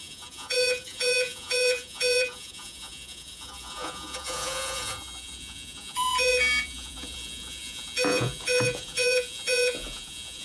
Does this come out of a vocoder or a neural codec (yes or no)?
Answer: yes